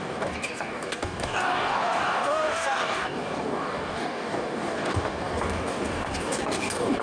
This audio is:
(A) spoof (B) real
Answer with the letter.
A